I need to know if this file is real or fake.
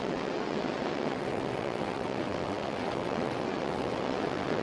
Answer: fake